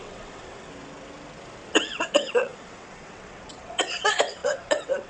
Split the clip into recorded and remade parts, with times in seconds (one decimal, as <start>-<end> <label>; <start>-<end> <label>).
0.0-0.7 remade; 0.7-1.7 recorded; 1.7-5.1 remade